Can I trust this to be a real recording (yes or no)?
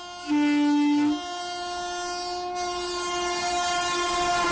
yes